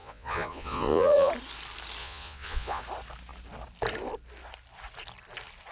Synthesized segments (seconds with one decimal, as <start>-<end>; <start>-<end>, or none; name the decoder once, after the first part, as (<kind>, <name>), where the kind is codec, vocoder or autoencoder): 0.0-1.3 (vocoder, Vocos); 2.0-2.8